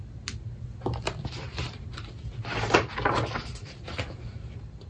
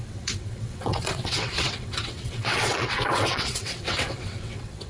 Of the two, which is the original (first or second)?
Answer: first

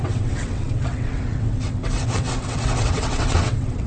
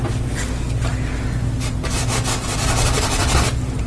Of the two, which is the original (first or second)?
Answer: second